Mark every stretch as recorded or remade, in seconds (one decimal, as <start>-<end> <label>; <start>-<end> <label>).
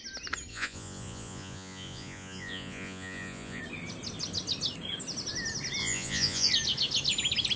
0.0-0.5 recorded; 0.5-3.6 remade; 3.6-5.8 recorded; 5.8-6.5 remade; 6.5-7.6 recorded